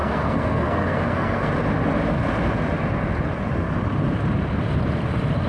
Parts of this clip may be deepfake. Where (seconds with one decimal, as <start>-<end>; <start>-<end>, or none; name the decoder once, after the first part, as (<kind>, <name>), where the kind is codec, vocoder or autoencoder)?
0.0-1.5 (codec, SNAC)